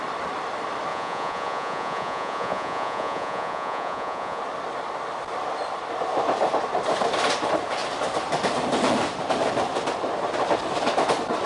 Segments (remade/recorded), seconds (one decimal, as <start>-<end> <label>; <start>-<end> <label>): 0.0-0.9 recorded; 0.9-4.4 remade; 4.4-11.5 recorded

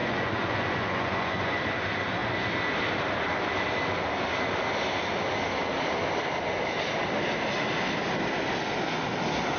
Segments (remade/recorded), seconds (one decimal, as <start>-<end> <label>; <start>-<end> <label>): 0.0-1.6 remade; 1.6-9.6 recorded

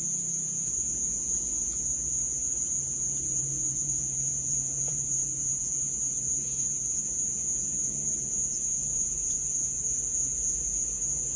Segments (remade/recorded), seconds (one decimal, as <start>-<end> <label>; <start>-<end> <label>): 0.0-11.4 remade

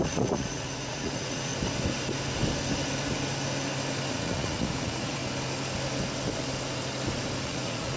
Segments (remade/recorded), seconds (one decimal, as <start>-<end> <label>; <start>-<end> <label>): 0.0-1.5 remade; 1.5-4.1 recorded; 4.1-5.2 remade; 5.2-7.4 recorded; 7.4-8.0 remade